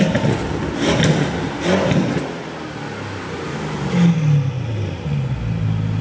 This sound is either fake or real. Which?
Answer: real